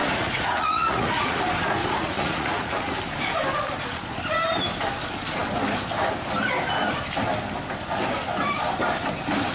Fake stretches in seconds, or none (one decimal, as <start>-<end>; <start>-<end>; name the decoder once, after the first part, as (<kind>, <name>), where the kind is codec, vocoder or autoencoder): 0.0-1.4 (vocoder, Vocos); 1.8-2.9